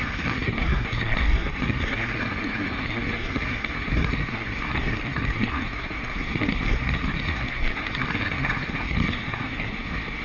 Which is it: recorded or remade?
remade